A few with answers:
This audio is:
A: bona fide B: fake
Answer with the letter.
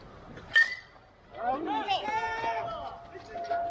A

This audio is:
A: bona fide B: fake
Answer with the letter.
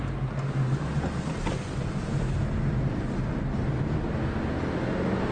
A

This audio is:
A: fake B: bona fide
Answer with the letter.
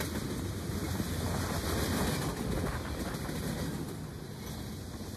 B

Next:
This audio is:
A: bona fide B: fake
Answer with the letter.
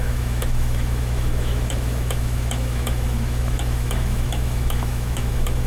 B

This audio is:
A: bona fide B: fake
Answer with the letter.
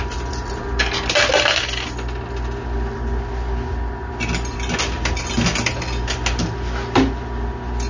A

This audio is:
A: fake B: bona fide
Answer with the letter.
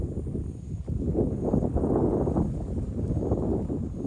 B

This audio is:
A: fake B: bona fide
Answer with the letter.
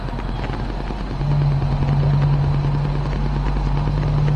B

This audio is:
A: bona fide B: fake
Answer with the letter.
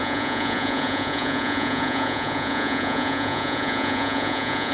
B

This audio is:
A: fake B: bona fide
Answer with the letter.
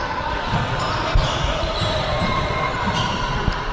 A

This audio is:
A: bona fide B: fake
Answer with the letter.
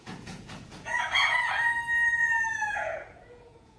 B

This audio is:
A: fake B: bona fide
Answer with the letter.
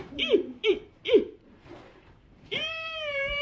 A